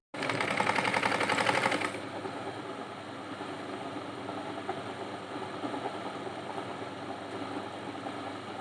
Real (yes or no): yes